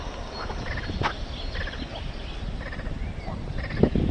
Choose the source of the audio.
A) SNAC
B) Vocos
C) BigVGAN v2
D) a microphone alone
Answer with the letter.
D